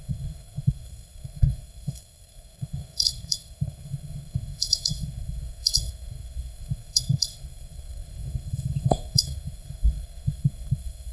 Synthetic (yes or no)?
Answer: yes